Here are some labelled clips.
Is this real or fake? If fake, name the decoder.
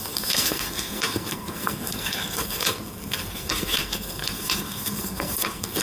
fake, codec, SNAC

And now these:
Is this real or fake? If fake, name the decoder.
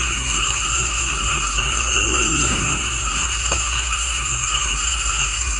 fake, codec, SNAC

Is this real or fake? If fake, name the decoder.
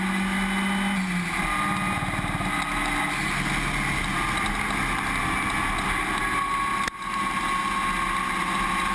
real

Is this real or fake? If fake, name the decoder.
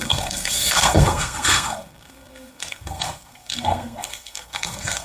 fake, codec, SNAC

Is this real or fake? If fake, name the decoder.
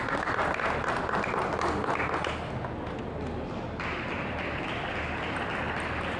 real